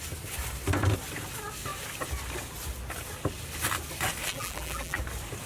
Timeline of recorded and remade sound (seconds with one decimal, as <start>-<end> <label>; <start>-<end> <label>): 0.0-4.3 recorded; 4.3-5.0 remade; 5.0-5.5 recorded